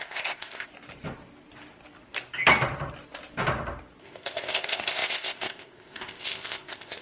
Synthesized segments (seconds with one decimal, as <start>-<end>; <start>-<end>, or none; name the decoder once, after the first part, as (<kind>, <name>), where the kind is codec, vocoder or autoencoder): 0.0-0.7 (codec, ZipCodec); 4.0-7.0